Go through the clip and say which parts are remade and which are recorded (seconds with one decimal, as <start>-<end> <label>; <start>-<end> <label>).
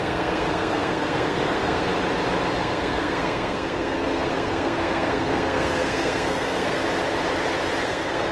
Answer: 0.0-1.9 remade; 1.9-2.6 recorded; 2.6-6.8 remade; 6.8-7.8 recorded; 7.8-8.3 remade